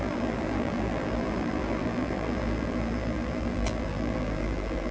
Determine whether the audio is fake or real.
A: fake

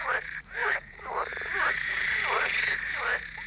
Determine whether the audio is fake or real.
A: fake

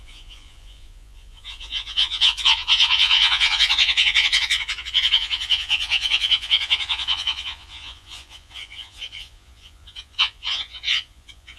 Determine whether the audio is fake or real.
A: fake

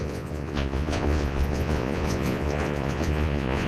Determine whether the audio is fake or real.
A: fake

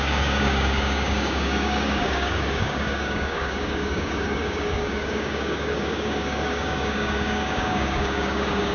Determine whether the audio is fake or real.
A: fake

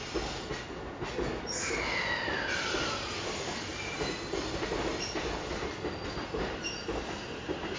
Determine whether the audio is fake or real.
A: real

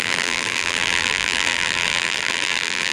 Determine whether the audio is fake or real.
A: fake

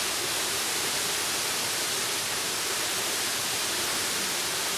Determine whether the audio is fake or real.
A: real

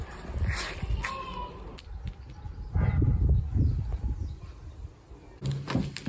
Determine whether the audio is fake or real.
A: real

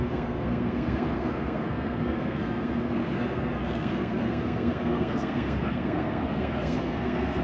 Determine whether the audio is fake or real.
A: fake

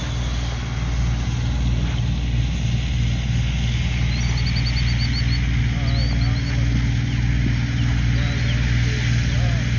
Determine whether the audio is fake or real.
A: real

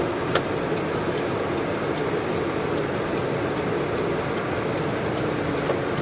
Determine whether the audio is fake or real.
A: real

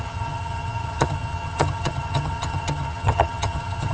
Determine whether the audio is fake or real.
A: fake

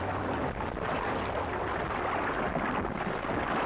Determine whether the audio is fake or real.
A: real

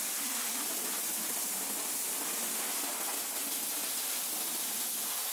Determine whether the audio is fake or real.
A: real